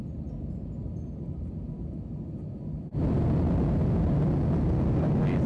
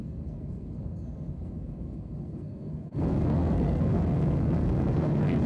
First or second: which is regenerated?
second